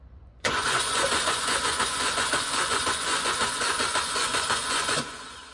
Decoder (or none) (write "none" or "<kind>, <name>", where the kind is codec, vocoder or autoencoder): vocoder, Vocos